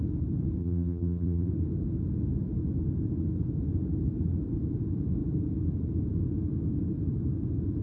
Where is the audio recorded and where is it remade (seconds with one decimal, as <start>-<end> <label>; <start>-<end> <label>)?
0.0-0.6 recorded; 0.6-1.5 remade; 1.5-7.8 recorded